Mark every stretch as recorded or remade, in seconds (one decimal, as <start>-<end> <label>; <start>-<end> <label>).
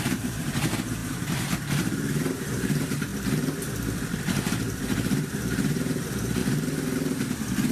0.0-3.1 remade; 3.1-4.2 recorded; 4.2-6.4 remade; 6.4-7.7 recorded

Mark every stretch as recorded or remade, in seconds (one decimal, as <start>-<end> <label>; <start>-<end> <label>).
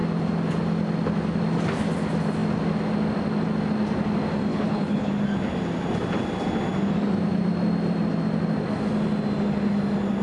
0.0-4.5 recorded; 4.5-5.1 remade; 5.1-10.2 recorded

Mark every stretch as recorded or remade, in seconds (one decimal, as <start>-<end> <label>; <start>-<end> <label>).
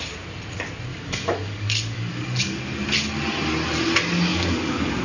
0.0-0.9 recorded; 0.9-2.6 remade; 2.6-4.3 recorded; 4.3-5.0 remade